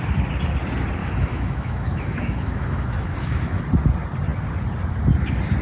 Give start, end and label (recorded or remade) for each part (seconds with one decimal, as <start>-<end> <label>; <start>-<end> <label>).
0.0-1.0 recorded; 1.0-3.6 remade; 3.6-5.6 recorded